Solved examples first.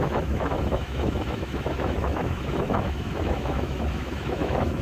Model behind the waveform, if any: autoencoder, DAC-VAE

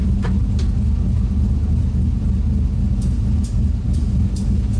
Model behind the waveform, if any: none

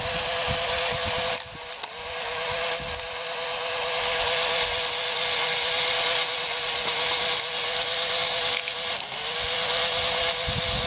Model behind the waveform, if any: none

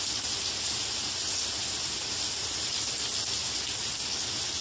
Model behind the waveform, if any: none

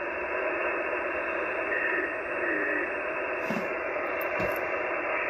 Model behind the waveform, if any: none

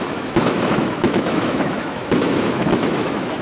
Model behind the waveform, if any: autoencoder, DAC-VAE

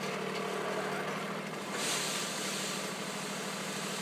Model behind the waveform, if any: none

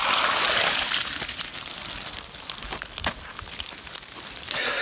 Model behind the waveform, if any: none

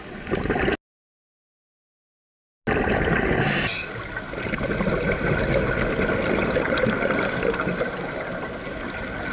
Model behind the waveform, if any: none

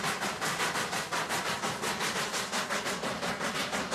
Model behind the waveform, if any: none